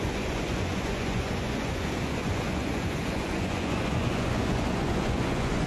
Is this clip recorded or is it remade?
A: remade